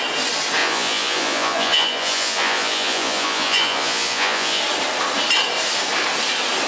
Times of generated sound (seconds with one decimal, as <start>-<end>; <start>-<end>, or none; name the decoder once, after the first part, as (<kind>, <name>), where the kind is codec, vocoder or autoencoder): 0.6-4.6 (vocoder, Vocos)

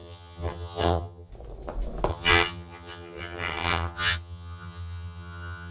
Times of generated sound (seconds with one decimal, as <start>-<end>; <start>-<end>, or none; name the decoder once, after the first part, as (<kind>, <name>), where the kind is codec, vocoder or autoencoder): 0.0-1.3 (vocoder, HiFi-GAN); 2.1-5.7

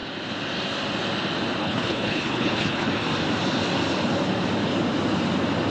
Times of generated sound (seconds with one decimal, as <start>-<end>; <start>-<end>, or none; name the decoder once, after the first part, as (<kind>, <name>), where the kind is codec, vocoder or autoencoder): 1.6-2.9 (codec, HILCodec)

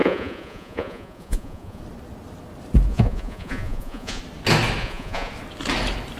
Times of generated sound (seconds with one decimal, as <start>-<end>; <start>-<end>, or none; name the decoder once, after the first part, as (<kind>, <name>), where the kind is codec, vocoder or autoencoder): 0.0-1.8 (vocoder, Vocos); 2.9-4.2; 4.8-5.3